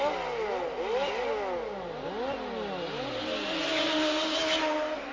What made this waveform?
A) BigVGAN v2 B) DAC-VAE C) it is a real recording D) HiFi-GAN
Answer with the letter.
C